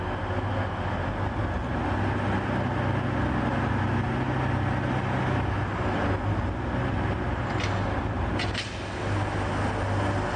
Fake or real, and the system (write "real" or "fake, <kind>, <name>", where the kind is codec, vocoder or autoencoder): real